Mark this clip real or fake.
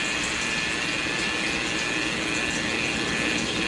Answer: real